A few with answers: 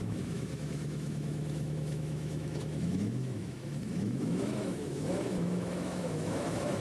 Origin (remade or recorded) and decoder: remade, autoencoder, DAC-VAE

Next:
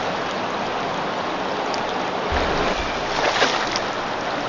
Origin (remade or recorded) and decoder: recorded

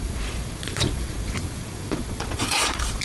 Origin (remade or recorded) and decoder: remade, vocoder, Vocos